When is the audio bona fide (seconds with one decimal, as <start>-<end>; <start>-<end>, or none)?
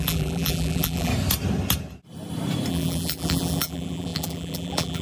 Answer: 1.1-2.7